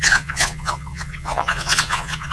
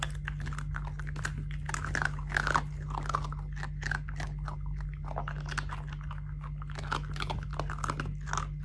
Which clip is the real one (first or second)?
second